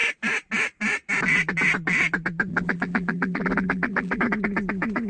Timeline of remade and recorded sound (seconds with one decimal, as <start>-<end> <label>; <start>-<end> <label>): 0.0-2.5 recorded; 2.5-4.2 remade; 4.2-5.1 recorded